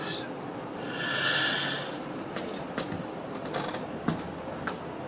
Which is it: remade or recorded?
recorded